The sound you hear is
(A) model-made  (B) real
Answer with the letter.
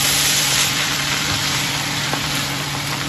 A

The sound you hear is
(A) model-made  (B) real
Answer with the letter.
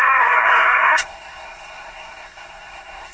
A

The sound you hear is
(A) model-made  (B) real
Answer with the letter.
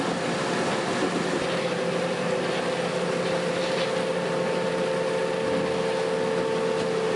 B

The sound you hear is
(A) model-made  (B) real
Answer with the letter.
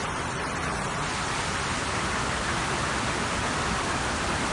B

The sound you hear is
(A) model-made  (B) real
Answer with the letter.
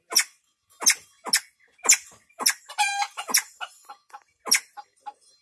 B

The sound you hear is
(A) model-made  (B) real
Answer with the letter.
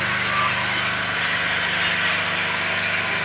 B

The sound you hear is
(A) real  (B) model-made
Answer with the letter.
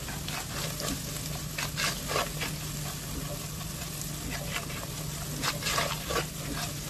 A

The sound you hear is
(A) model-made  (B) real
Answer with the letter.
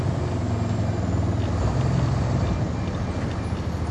B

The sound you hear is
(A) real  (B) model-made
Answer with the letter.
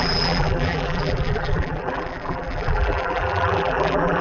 B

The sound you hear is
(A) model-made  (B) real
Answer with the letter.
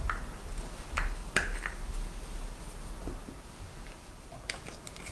B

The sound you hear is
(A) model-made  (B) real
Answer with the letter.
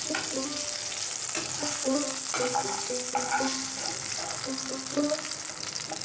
B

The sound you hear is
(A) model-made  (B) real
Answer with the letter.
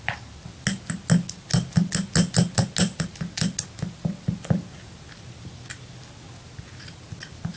B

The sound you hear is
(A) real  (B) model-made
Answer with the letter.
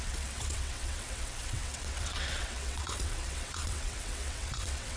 B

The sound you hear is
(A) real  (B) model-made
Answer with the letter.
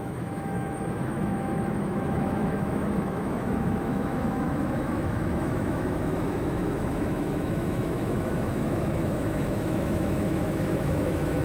B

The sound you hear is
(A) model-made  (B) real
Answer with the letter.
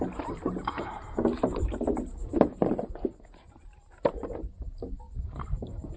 B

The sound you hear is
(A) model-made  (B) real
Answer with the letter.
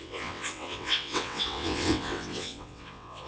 A